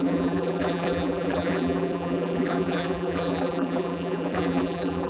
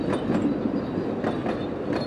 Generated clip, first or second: first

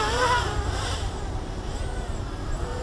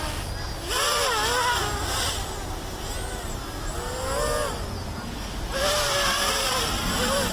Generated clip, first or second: first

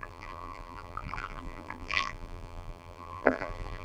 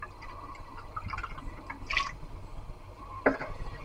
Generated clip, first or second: first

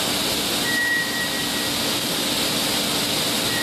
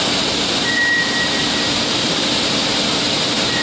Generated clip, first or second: second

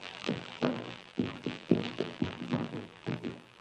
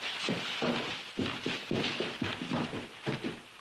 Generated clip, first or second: first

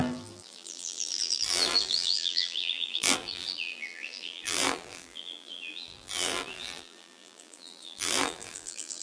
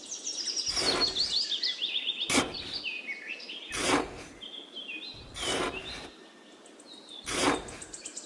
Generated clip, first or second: first